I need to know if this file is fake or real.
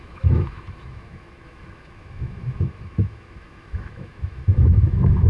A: fake